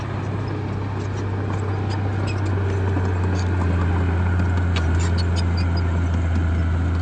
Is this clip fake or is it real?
real